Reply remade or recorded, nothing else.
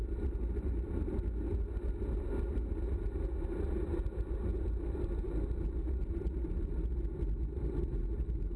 recorded